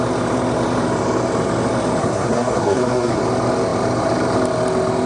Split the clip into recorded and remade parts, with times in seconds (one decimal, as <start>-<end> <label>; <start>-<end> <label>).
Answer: 0.0-2.0 recorded; 2.0-3.2 remade; 3.2-5.1 recorded

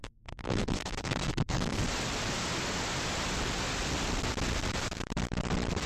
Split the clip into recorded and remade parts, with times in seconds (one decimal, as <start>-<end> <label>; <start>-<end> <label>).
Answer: 0.0-1.8 remade; 1.8-5.9 recorded

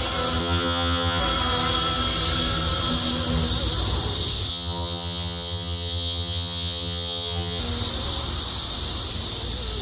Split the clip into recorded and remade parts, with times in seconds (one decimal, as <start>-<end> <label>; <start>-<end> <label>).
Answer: 0.0-0.4 recorded; 0.4-1.2 remade; 1.2-4.5 recorded; 4.5-7.6 remade; 7.6-9.8 recorded

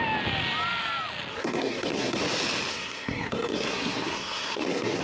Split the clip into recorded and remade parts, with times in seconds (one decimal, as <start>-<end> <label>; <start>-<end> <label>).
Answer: 0.0-1.3 recorded; 1.3-2.2 remade; 2.2-2.7 recorded; 2.7-5.0 remade

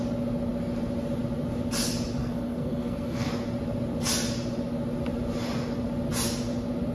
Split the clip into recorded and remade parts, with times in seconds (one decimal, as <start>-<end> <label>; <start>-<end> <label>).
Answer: 0.0-2.2 recorded; 2.2-3.3 remade; 3.3-6.9 recorded